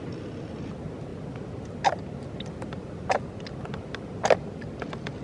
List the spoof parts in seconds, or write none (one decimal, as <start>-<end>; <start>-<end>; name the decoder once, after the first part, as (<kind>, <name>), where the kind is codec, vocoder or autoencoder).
none